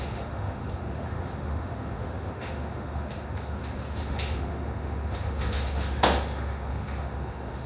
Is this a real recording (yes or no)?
no